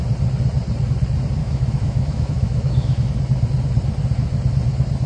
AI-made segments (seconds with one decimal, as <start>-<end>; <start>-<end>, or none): 1.4-3.1

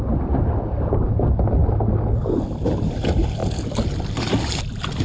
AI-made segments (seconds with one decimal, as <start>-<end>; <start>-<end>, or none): none